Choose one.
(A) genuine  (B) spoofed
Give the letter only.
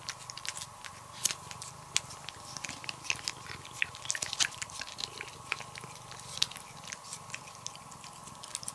A